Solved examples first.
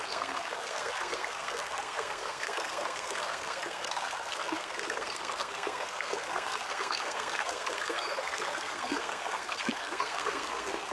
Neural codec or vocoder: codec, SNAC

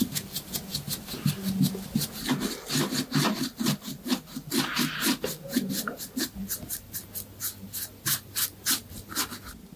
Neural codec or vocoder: none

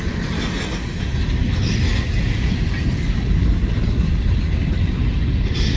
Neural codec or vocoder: none